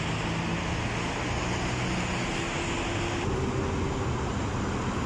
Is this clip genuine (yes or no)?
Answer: yes